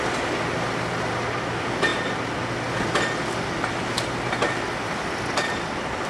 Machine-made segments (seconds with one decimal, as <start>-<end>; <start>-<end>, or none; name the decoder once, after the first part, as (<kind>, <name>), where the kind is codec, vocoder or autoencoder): none